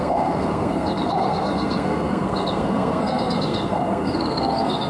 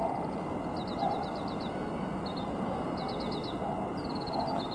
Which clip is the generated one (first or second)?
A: first